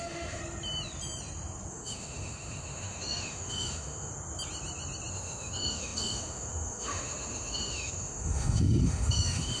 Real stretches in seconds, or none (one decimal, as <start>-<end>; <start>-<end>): 0.4-1.7; 4.1-5.1